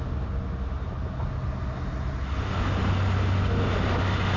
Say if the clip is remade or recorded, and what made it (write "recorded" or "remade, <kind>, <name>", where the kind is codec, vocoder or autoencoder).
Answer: recorded